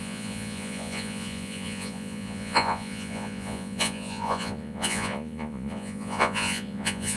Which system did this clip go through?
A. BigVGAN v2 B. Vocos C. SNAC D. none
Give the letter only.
B